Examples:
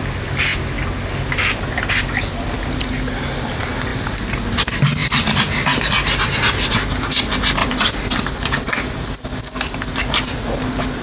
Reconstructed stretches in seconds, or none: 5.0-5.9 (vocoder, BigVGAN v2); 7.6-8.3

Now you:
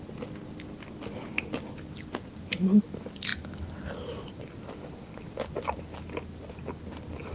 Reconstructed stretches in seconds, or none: none

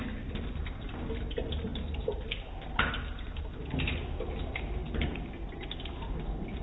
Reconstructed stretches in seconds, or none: none

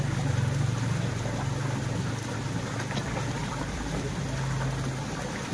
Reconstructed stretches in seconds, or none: 3.4-4.2 (vocoder, BigVGAN v2)

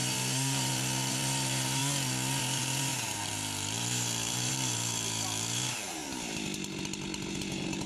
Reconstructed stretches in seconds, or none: 0.0-1.8 (vocoder, BigVGAN v2); 2.4-6.0; 7.3-7.9

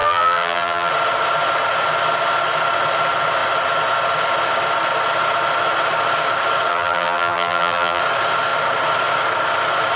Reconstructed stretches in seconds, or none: 0.0-0.9 (vocoder, BigVGAN v2); 6.7-8.0

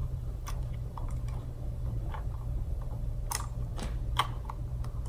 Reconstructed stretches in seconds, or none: 0.0-3.1 (vocoder, BigVGAN v2)

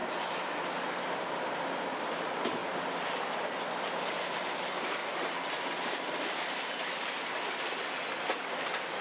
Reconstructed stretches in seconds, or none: 1.0-2.6 (vocoder, BigVGAN v2); 3.6-5.0; 5.9-9.0